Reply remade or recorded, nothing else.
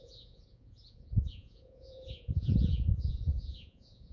remade